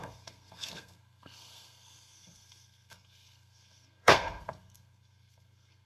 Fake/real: fake